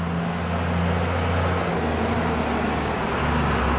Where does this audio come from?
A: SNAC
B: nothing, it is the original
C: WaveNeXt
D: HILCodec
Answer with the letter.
B